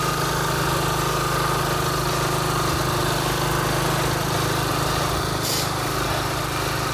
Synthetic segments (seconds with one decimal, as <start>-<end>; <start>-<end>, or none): 4.7-6.4